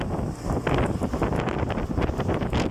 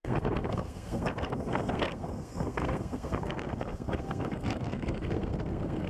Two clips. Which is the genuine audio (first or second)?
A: first